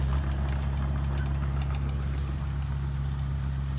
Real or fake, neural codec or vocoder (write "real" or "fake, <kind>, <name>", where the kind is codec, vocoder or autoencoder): real